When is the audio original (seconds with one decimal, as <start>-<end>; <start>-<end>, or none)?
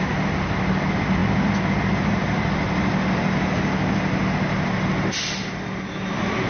0.0-6.5